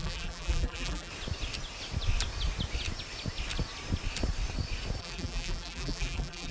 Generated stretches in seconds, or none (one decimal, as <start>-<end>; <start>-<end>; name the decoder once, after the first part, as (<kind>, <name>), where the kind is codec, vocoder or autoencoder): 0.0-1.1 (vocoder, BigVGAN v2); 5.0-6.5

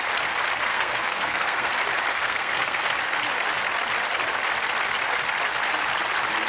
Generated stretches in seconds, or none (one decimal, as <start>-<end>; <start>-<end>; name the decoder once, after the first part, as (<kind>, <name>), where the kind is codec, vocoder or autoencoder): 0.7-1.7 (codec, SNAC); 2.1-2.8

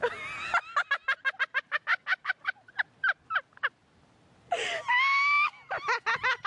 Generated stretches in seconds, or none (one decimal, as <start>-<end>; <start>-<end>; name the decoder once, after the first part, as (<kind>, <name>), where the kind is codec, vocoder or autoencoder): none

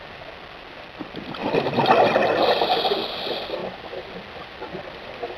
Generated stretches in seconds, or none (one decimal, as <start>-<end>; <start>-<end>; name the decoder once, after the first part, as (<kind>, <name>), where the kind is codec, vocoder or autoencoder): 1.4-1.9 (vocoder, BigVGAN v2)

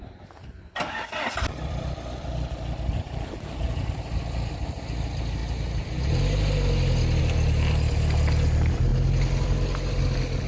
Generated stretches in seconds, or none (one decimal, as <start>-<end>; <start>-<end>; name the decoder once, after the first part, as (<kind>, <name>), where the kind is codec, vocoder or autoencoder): none

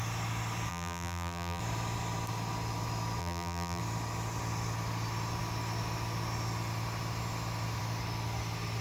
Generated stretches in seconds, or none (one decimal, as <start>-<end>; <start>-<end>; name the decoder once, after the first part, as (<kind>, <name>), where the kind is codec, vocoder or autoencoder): 0.7-1.6 (vocoder, BigVGAN v2); 3.2-3.8

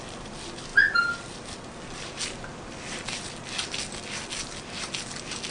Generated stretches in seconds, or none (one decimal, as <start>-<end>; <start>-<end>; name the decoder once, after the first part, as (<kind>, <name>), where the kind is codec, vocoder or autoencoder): none